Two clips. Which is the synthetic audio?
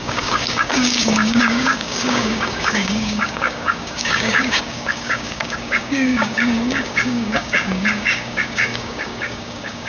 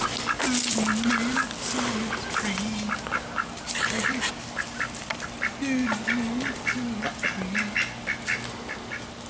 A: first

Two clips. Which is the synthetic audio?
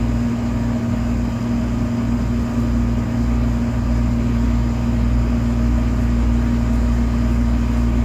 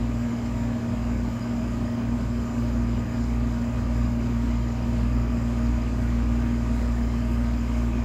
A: second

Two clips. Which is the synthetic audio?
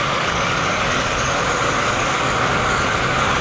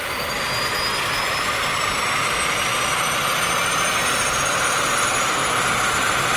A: first